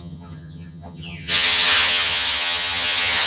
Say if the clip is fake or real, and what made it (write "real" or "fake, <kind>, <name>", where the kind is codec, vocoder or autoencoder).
fake, vocoder, HiFi-GAN